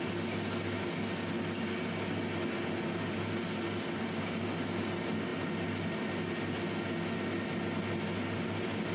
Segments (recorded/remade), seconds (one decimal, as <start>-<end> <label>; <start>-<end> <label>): 0.0-8.9 recorded